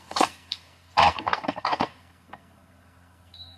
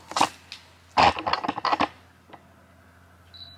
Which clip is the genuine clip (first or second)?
second